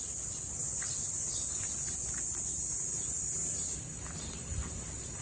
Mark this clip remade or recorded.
recorded